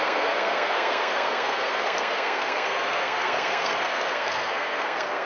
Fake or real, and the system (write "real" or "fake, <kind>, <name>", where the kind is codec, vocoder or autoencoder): fake, codec, SNAC